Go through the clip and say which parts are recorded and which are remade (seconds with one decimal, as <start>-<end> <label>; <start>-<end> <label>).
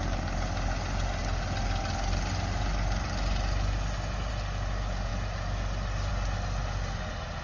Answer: 0.0-7.4 recorded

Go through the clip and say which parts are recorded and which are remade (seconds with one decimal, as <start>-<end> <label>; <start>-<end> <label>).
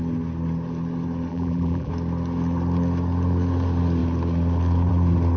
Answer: 0.0-1.3 recorded; 1.3-1.9 remade; 1.9-5.4 recorded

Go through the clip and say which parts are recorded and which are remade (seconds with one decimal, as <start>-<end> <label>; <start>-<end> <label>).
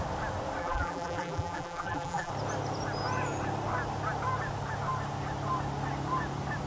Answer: 0.0-0.6 recorded; 0.6-2.3 remade; 2.3-6.7 recorded